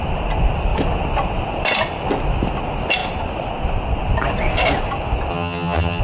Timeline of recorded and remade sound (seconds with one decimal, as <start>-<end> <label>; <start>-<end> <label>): 0.0-5.3 recorded; 5.3-6.0 remade